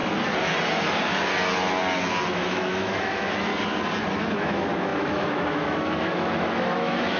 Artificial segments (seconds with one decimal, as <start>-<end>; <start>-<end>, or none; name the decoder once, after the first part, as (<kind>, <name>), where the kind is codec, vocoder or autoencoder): 2.3-3.5 (autoencoder, DAC-VAE); 4.4-7.2